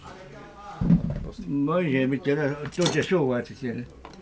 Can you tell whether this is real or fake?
real